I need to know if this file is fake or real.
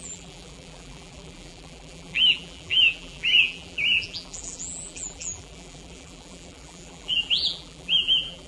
fake